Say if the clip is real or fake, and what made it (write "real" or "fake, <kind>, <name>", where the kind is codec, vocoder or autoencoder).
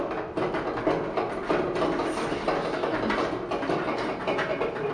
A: real